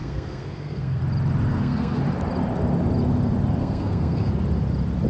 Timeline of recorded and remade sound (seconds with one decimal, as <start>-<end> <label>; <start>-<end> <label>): 0.0-1.0 remade; 1.0-1.5 recorded; 1.5-2.0 remade; 2.0-3.6 recorded; 3.6-4.3 remade; 4.3-5.1 recorded